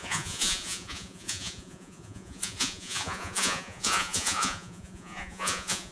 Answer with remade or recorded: remade